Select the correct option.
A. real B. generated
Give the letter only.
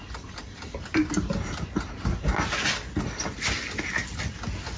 A